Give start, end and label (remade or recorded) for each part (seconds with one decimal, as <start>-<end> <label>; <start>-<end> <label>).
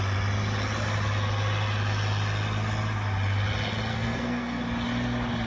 0.0-3.9 recorded; 3.9-4.6 remade; 4.6-5.5 recorded